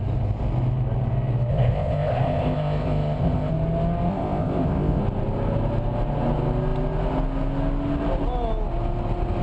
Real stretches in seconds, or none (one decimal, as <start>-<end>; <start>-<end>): 0.0-1.5; 3.5-4.1; 5.0-9.4